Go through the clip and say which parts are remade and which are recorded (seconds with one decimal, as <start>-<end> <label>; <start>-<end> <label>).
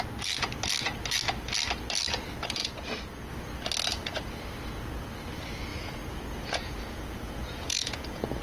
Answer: 0.0-2.6 recorded; 2.6-3.3 remade; 3.3-3.9 recorded; 3.9-4.4 remade; 4.4-5.7 recorded; 5.7-8.4 remade